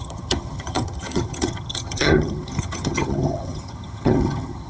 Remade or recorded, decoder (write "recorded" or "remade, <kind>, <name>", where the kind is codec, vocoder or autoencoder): remade, vocoder, HiFi-GAN